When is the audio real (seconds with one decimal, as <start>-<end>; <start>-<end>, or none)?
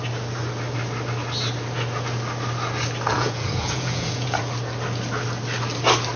0.0-3.1; 4.4-6.2